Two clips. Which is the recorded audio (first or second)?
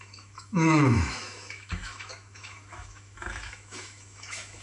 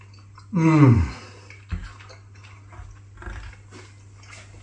second